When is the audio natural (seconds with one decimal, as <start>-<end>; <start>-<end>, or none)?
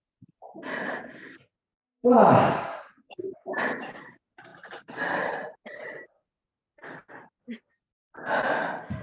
4.5-7.8